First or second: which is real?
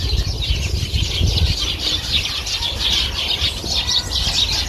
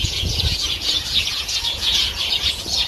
first